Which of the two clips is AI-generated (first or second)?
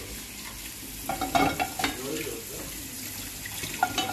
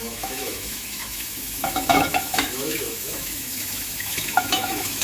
second